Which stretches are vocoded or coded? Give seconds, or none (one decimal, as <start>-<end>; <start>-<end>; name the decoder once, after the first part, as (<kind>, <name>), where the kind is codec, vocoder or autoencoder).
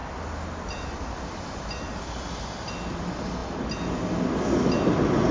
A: none